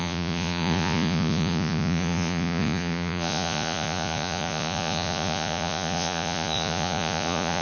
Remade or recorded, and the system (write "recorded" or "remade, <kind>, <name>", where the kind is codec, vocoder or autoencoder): remade, vocoder, Vocos